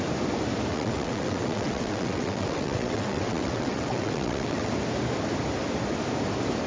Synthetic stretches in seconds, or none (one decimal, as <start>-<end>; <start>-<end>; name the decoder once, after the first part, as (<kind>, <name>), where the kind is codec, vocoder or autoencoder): 0.7-4.7 (vocoder, WaveNeXt)